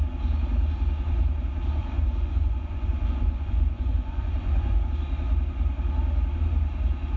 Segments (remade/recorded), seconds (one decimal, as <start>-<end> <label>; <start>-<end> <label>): 0.0-1.8 recorded; 1.8-4.9 remade; 4.9-7.2 recorded

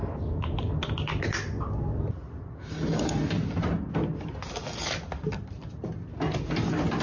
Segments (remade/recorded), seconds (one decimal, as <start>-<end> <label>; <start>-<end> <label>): 0.0-7.0 recorded

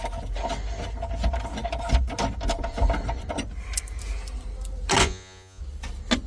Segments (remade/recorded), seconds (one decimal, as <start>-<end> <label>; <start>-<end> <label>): 0.0-5.0 recorded; 5.0-5.6 remade; 5.6-6.3 recorded

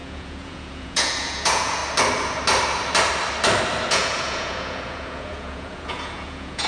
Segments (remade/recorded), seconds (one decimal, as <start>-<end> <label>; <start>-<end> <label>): 0.0-1.8 remade; 1.8-3.9 recorded; 3.9-6.7 remade

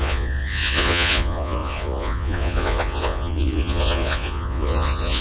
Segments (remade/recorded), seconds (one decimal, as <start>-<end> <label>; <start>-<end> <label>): 0.0-5.2 remade

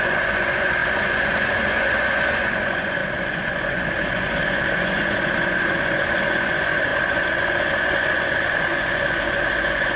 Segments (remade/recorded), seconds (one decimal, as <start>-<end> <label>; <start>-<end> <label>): 0.0-10.0 remade

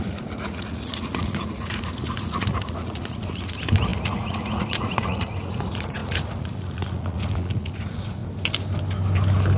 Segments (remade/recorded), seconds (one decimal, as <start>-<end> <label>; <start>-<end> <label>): 0.0-8.2 remade; 8.2-9.6 recorded